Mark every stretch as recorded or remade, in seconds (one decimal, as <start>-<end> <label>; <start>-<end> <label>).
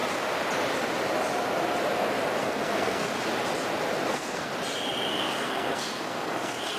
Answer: 0.0-2.4 recorded; 2.4-3.1 remade; 3.1-4.1 recorded; 4.1-4.5 remade; 4.5-5.1 recorded; 5.1-6.8 remade